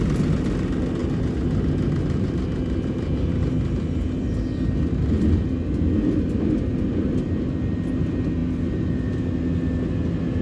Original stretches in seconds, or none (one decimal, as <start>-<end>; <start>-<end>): 0.0-10.4